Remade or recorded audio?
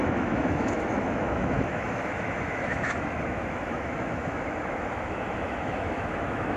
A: remade